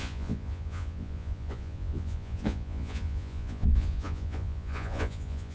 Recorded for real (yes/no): no